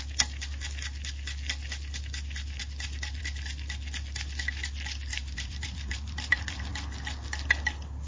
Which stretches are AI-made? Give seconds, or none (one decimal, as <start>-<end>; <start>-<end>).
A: 5.1-6.7